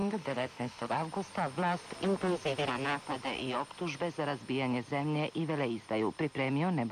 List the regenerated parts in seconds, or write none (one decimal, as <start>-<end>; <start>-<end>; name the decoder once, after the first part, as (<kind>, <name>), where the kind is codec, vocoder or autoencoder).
0.0-0.9 (autoencoder, DAC-VAE)